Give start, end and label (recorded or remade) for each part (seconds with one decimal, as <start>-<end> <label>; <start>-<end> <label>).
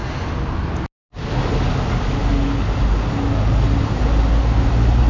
0.0-5.1 recorded